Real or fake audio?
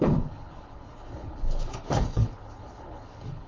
fake